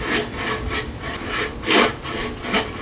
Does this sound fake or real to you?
real